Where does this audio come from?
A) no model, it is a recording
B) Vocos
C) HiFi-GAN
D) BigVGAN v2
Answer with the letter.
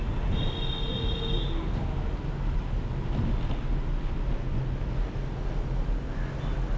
A